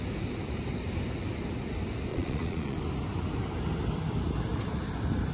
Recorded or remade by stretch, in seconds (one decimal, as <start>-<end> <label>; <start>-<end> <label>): 0.0-2.1 recorded; 2.1-2.8 remade; 2.8-5.3 recorded